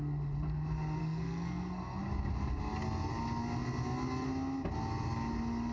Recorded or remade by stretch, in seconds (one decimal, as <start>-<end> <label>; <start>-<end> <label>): 0.0-1.0 recorded; 1.0-2.0 remade; 2.0-5.7 recorded